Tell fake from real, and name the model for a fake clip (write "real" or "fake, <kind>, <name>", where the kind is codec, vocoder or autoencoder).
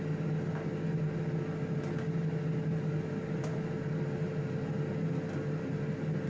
real